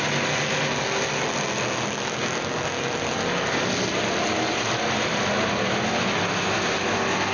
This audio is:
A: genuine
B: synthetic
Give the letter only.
A